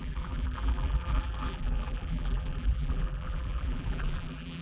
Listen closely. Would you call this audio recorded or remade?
remade